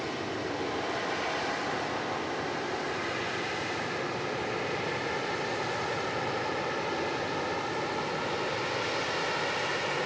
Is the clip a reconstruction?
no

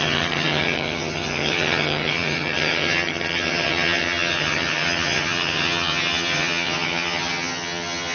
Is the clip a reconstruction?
yes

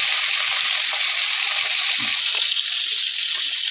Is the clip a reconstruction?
no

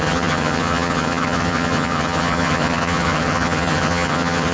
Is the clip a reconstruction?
yes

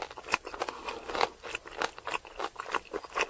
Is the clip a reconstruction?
no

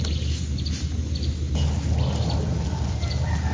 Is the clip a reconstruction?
no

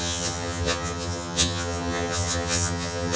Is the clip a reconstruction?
yes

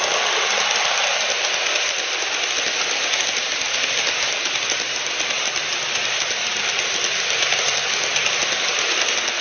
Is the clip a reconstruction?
no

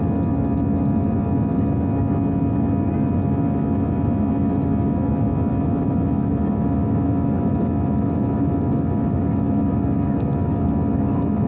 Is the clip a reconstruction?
no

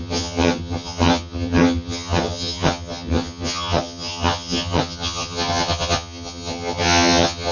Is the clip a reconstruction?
yes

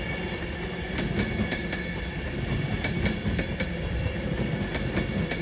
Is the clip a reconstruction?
no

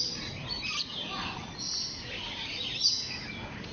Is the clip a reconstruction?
no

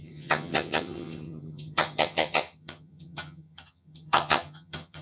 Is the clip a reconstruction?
yes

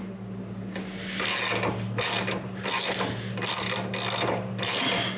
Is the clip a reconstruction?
no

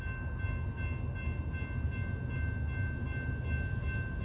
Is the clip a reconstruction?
no